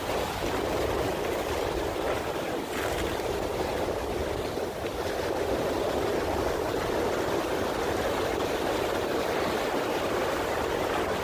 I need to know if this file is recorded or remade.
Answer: recorded